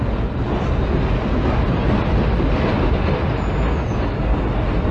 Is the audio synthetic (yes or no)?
no